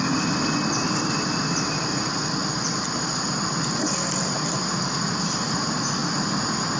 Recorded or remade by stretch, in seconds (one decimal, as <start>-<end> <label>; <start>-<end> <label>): 0.0-6.8 recorded